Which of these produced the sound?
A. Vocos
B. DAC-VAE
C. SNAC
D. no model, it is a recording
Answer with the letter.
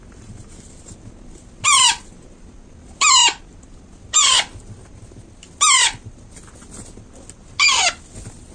D